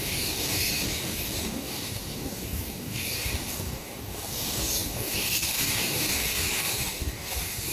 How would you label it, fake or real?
fake